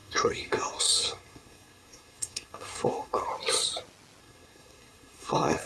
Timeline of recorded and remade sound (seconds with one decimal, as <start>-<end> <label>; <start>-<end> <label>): 0.0-3.3 remade; 3.3-4.2 recorded; 4.2-5.7 remade